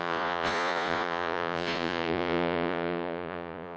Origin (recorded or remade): remade